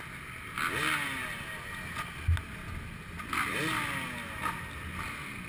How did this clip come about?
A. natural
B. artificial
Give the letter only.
A